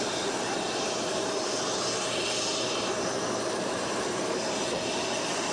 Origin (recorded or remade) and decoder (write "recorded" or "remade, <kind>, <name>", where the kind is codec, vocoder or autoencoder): remade, vocoder, BigVGAN v2